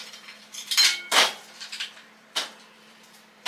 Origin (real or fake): fake